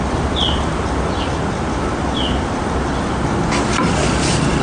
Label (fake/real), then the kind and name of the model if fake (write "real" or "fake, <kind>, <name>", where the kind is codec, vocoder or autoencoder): fake, vocoder, BigVGAN v2